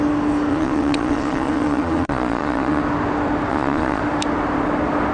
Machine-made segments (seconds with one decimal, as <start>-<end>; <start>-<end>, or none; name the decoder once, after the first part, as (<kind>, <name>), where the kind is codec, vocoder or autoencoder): 0.5-2.8 (vocoder, Vocos); 3.5-4.0